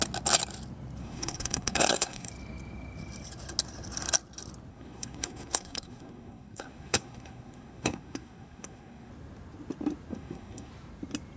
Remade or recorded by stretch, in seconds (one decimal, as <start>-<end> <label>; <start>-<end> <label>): 0.0-1.0 recorded; 1.0-2.3 remade; 2.3-4.7 recorded; 4.7-9.1 remade; 9.1-10.1 recorded; 10.1-10.7 remade; 10.7-11.4 recorded